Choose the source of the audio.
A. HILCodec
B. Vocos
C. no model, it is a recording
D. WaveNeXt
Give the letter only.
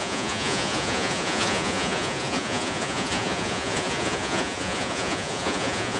B